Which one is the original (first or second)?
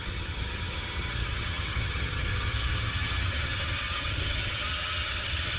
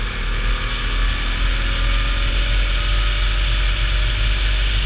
second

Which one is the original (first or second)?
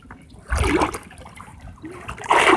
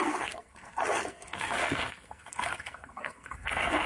first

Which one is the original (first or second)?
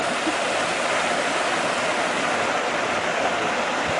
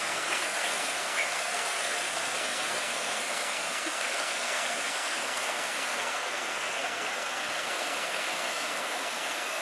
first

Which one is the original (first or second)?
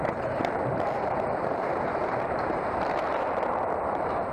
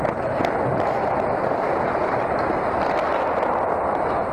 second